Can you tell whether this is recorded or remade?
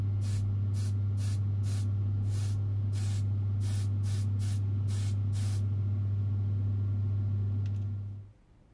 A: recorded